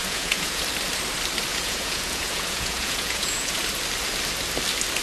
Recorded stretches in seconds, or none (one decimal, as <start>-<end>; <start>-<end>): 0.6-1.5; 3.6-5.0